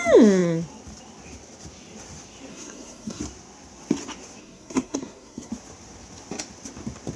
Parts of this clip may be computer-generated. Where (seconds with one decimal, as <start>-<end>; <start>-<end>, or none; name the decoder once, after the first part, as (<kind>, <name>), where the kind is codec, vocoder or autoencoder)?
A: 2.5-3.2 (codec, SNAC); 4.4-5.5